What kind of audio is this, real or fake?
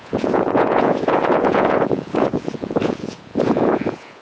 fake